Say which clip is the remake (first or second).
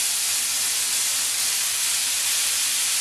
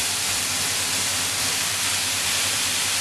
second